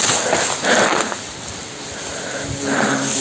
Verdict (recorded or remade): recorded